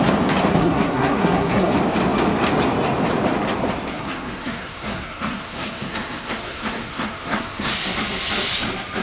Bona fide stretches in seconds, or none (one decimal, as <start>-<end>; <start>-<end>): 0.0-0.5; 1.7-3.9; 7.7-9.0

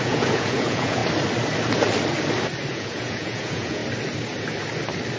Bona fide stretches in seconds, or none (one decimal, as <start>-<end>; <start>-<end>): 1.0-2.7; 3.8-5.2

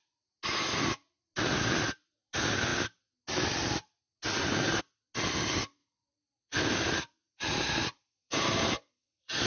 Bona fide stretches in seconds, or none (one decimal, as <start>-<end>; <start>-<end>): 0.0-5.8